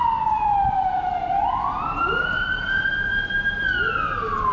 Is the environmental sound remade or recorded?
recorded